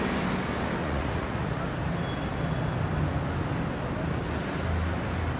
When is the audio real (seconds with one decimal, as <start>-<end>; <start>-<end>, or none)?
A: 0.0-0.8; 1.6-5.4